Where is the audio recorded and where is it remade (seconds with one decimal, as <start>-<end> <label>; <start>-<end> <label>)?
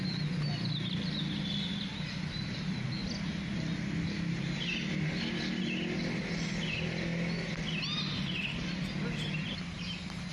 0.0-10.3 recorded